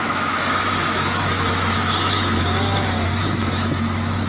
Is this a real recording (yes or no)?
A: no